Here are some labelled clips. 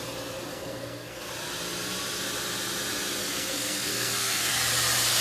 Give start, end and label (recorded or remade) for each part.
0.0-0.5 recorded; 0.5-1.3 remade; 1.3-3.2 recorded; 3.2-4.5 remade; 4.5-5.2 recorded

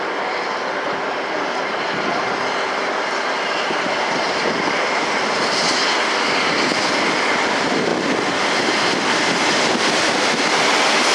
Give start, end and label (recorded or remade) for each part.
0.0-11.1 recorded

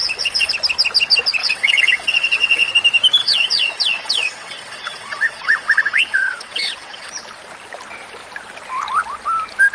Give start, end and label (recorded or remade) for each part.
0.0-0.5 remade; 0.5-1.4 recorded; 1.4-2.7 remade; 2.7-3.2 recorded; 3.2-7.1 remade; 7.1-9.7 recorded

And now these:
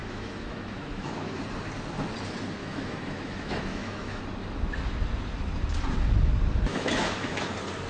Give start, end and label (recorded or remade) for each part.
0.0-1.4 remade; 1.4-2.6 recorded; 2.6-4.2 remade; 4.2-6.7 recorded; 6.7-7.4 remade; 7.4-7.9 recorded